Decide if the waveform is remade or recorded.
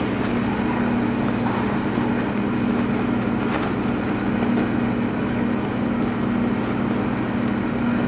recorded